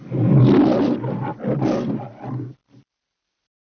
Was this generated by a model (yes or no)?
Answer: no